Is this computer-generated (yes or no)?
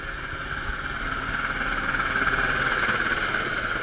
no